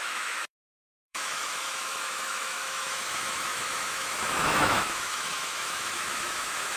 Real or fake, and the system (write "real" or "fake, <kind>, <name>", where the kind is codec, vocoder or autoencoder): fake, autoencoder, DAC-VAE